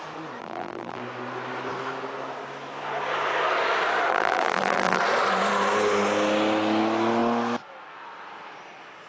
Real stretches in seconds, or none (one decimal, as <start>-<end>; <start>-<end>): 0.0-0.4; 1.0-4.1; 5.0-9.1

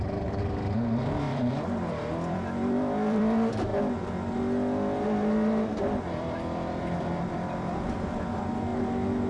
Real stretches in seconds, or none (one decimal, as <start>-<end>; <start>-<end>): 3.7-6.0; 8.7-9.3

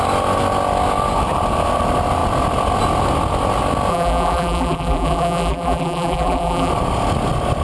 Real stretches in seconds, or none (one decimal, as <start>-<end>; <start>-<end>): 0.0-3.9; 6.7-7.6

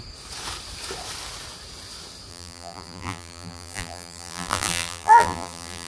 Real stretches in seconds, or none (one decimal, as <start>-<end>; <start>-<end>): 0.0-2.3

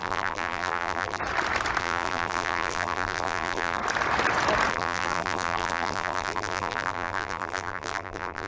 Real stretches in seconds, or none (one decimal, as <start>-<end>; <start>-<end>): 1.2-1.8; 3.8-4.7

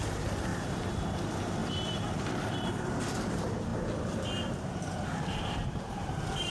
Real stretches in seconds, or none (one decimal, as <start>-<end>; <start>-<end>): none

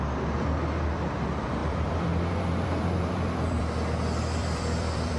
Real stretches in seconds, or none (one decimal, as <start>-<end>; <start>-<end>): 0.0-1.6; 3.6-4.4

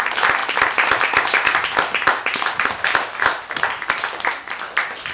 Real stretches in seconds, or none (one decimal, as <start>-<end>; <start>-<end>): 0.0-5.1